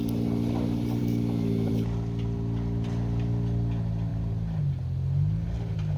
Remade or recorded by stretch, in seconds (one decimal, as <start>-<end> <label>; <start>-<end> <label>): 0.0-1.0 recorded; 1.0-1.7 remade; 1.7-6.0 recorded